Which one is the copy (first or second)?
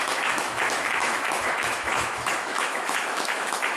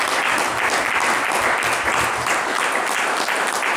first